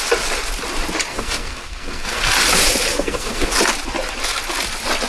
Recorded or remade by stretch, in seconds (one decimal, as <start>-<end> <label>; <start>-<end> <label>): 0.0-1.1 recorded; 1.1-2.3 remade; 2.3-2.9 recorded; 2.9-3.5 remade; 3.5-5.1 recorded